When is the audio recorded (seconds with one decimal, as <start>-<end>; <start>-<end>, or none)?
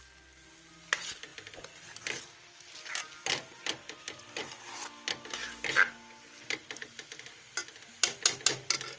0.0-9.0